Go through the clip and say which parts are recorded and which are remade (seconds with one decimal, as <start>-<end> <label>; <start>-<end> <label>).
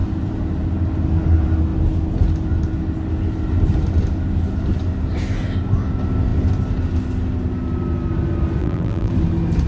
0.0-8.6 recorded; 8.6-9.1 remade; 9.1-9.7 recorded